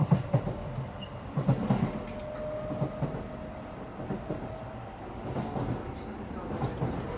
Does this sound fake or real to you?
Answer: real